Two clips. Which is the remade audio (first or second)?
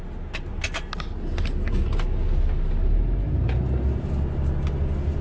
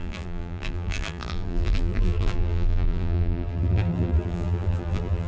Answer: second